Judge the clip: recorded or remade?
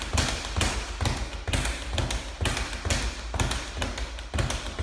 recorded